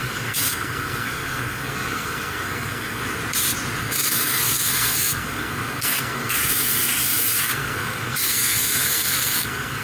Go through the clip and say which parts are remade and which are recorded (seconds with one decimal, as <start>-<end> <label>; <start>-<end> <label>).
0.0-3.2 remade; 3.2-3.8 recorded; 3.8-9.8 remade